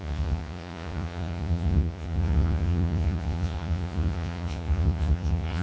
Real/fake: fake